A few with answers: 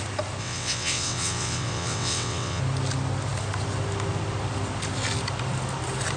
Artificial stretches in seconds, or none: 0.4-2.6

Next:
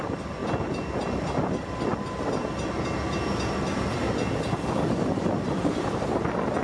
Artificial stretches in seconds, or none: none

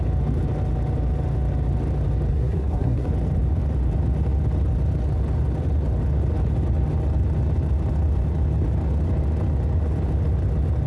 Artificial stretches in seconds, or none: 2.3-3.1

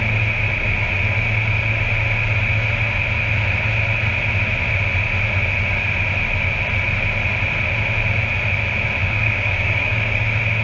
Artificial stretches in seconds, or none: 9.0-10.2

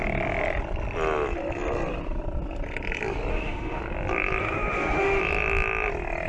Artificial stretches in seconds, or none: 3.3-3.8; 4.4-5.2

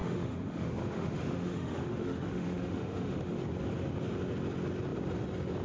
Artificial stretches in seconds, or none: 0.0-3.4

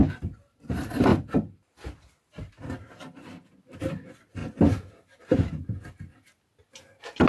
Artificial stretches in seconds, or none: 0.7-4.4; 5.2-7.3

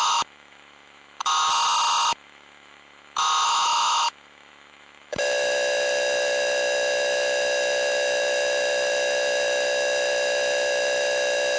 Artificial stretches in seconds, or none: 0.0-1.5; 2.1-11.6